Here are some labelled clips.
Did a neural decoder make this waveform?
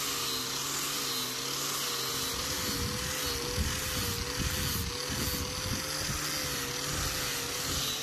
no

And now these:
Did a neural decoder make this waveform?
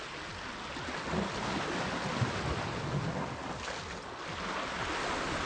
no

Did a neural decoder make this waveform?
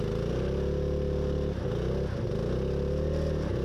no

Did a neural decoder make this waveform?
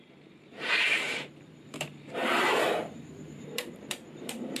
yes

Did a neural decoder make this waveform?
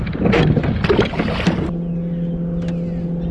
no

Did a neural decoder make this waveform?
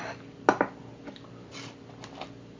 no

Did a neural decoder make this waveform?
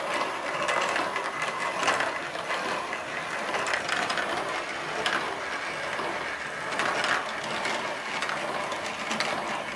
no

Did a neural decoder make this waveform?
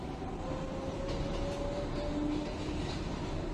no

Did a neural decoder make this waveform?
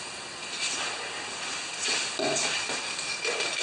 no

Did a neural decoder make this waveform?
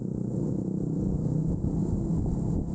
no